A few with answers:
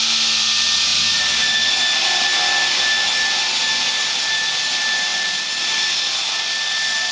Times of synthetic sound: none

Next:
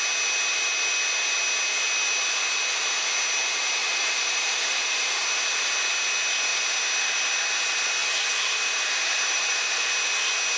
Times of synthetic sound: 3.8-5.1 (vocoder, BigVGAN v2); 8.0-9.9

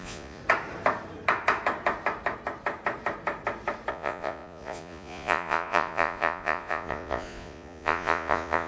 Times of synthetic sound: 0.0-0.4 (vocoder, Vocos); 3.9-8.7

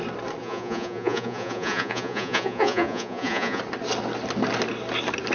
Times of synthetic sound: 0.4-3.6 (vocoder, Vocos)

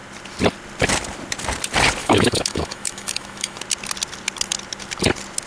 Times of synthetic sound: 2.0-3.6 (autoencoder, DAC-VAE)

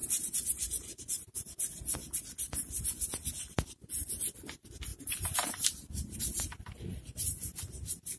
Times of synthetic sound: 4.9-6.2 (vocoder, BigVGAN v2)

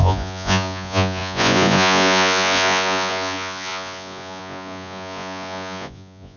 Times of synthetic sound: 0.0-6.4 (vocoder, Vocos)

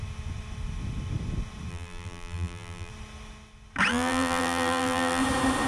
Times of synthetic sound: 1.7-2.9 (vocoder, BigVGAN v2); 3.9-5.2